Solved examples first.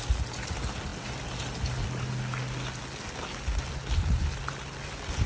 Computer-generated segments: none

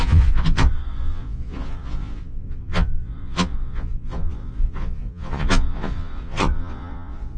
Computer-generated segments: 0.0-7.4 (vocoder, Vocos)

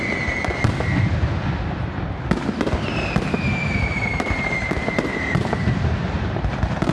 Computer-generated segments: 3.5-6.9 (vocoder, BigVGAN v2)